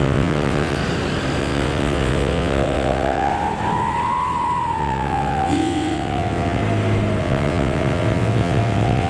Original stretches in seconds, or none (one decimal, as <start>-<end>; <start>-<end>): 0.8-1.4; 3.3-4.8; 6.6-7.2